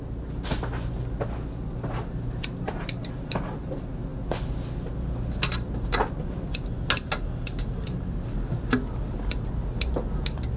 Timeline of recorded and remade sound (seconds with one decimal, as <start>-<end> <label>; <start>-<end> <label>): 0.0-10.6 recorded